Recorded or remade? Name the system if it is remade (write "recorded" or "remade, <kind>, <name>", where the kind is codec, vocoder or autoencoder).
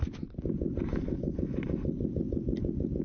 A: recorded